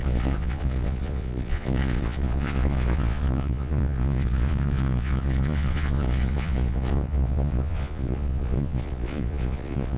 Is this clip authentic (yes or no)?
no